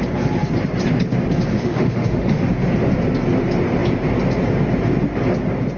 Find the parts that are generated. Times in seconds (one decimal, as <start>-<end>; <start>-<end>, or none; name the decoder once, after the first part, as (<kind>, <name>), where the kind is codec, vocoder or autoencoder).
1.5-2.4 (autoencoder, DAC-VAE)